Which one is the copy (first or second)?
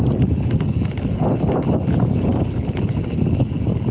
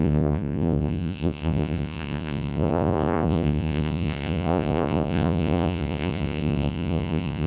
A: second